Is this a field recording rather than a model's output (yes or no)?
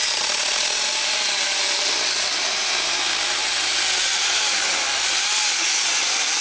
yes